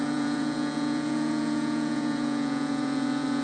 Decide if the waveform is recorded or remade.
remade